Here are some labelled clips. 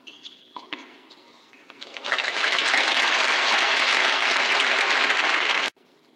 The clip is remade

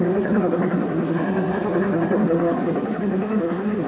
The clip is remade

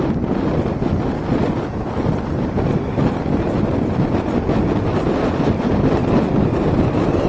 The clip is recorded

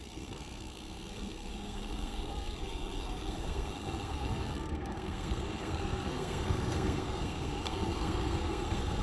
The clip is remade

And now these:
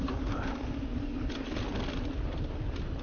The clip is recorded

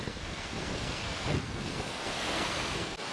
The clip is remade